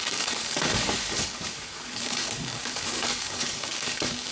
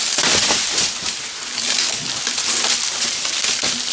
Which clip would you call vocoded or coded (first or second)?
first